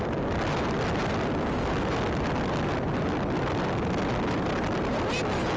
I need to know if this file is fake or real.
real